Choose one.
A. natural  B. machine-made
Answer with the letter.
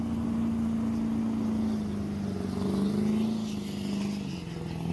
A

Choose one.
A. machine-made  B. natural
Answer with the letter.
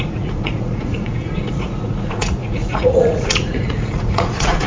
A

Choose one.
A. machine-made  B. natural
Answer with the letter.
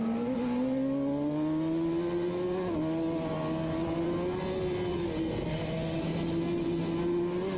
B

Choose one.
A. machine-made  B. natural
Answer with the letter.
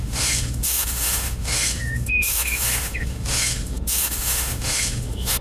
A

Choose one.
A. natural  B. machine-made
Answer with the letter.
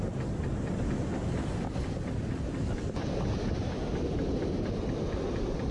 A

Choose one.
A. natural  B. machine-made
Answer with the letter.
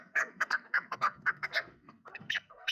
B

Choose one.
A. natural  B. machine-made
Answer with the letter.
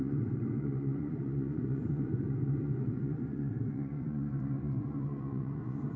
B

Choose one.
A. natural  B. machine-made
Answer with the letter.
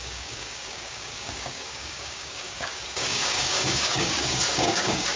B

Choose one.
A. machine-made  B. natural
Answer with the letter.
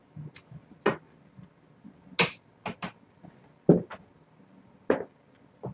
B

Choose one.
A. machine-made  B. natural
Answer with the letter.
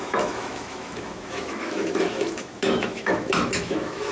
A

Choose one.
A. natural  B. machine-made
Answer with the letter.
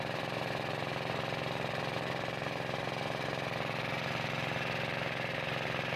B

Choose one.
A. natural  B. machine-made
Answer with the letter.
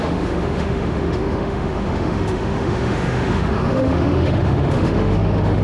B